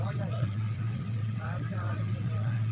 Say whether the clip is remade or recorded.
remade